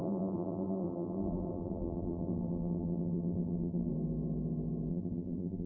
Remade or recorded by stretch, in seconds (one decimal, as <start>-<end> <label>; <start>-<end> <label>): 0.0-3.9 remade; 3.9-4.9 recorded; 4.9-5.7 remade